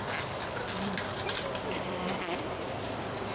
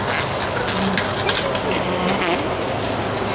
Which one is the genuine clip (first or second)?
second